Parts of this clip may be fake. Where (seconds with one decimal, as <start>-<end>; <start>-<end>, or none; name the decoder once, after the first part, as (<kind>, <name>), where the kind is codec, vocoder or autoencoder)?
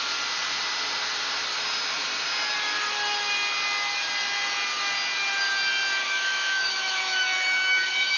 6.0-8.2 (autoencoder, DAC-VAE)